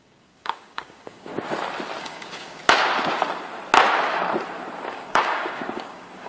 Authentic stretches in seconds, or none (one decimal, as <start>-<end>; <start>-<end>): 1.3-2.0; 2.6-4.9